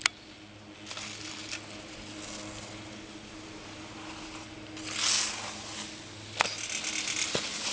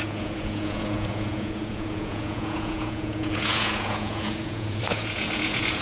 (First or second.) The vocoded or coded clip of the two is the second